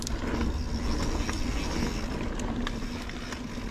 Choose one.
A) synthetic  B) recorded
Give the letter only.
B